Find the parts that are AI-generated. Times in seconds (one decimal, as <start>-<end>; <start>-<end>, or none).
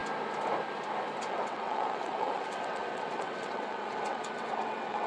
1.2-5.1